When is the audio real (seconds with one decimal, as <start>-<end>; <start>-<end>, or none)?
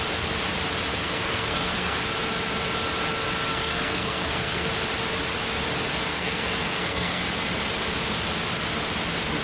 0.0-0.9; 2.0-3.5; 4.7-6.1; 7.2-9.4